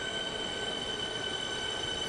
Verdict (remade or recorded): recorded